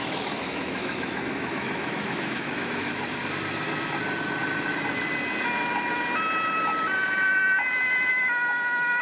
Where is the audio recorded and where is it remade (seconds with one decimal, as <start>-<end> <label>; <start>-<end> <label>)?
0.0-2.9 remade; 2.9-8.1 recorded; 8.1-9.0 remade

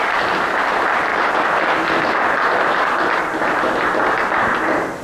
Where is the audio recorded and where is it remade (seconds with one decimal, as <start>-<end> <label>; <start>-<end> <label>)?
0.0-5.0 recorded

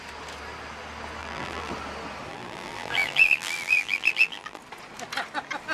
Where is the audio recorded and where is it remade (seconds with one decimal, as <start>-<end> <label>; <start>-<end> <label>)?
0.0-1.2 recorded; 1.2-1.7 remade; 1.7-2.3 recorded; 2.3-4.6 remade; 4.6-5.7 recorded

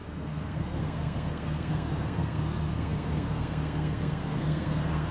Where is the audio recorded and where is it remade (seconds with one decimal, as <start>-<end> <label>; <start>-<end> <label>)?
0.0-5.1 remade

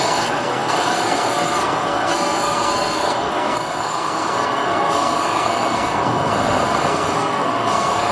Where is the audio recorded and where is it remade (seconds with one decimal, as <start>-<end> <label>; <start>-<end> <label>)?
0.0-8.1 remade

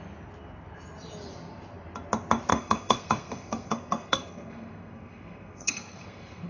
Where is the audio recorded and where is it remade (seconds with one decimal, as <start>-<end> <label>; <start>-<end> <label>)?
0.0-2.5 recorded; 2.5-6.5 remade

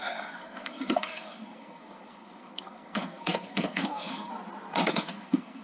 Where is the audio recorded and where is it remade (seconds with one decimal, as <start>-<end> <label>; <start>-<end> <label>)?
0.0-4.3 remade; 4.3-4.9 recorded; 4.9-5.6 remade

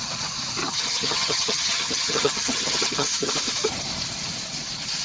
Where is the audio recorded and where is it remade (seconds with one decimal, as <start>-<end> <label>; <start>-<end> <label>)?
0.0-0.6 recorded; 0.6-3.3 remade; 3.3-5.0 recorded